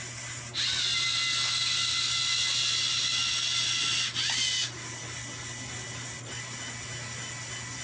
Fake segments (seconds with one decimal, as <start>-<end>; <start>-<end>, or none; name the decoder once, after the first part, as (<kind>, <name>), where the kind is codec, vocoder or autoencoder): none